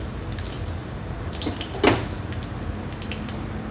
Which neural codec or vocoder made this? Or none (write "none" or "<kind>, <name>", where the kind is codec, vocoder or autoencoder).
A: none